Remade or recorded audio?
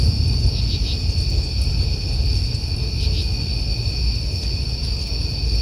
recorded